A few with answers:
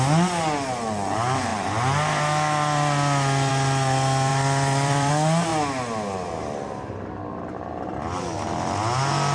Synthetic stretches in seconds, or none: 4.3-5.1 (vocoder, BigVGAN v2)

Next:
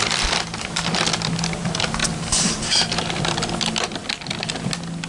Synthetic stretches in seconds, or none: 2.0-3.2 (vocoder, BigVGAN v2)

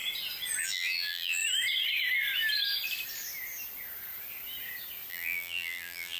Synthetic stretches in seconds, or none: 0.6-1.4 (vocoder, BigVGAN v2); 5.1-6.2

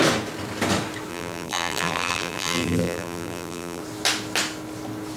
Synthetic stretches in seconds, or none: 1.1-3.8 (vocoder, BigVGAN v2)

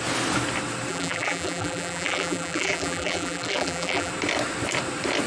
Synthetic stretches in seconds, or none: 0.9-4.1 (vocoder, BigVGAN v2)

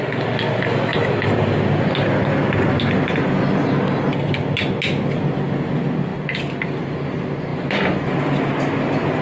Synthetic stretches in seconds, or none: 0.9-2.4 (vocoder, BigVGAN v2); 6.1-6.6

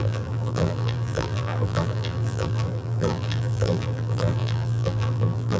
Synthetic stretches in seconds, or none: 0.0-5.6 (vocoder, BigVGAN v2)

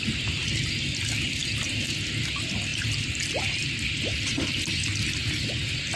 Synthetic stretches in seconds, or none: 2.7-3.2 (vocoder, BigVGAN v2)